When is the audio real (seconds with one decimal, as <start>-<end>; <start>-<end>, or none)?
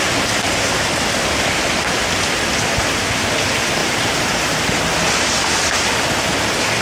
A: 0.0-3.8; 5.3-6.8